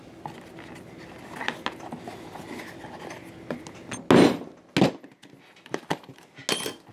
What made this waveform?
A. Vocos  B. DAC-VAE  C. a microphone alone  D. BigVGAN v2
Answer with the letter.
C